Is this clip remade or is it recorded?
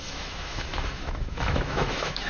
remade